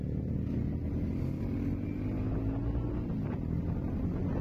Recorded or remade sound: recorded